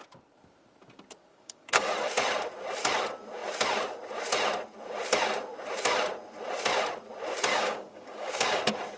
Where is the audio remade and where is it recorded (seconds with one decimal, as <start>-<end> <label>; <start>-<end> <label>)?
0.0-1.3 recorded; 1.3-1.9 remade; 1.9-7.5 recorded; 7.5-8.6 remade; 8.6-9.0 recorded